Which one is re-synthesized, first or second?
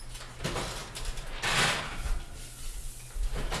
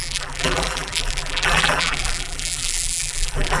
second